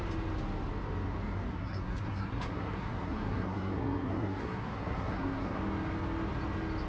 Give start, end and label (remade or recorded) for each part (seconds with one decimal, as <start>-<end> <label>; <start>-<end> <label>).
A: 0.0-1.5 recorded; 1.5-5.6 remade; 5.6-6.9 recorded